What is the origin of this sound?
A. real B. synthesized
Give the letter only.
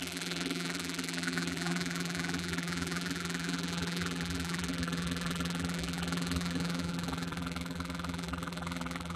B